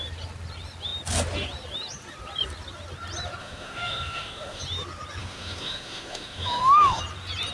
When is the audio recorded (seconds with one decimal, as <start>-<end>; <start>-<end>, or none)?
0.0-3.4; 4.6-5.2; 7.0-7.5